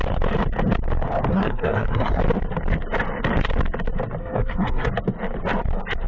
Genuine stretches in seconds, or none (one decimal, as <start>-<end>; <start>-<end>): 0.0-1.3; 2.2-4.2; 4.9-6.1